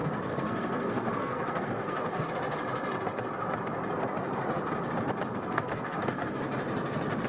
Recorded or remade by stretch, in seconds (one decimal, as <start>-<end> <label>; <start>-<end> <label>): 0.0-2.3 remade; 2.3-5.3 recorded; 5.3-6.4 remade; 6.4-7.3 recorded